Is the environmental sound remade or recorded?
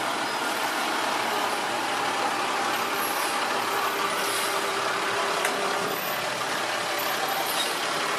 remade